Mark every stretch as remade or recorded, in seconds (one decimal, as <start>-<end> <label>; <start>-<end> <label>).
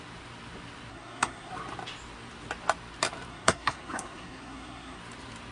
0.0-0.9 recorded; 0.9-1.5 remade; 1.5-3.3 recorded; 3.3-5.0 remade; 5.0-5.5 recorded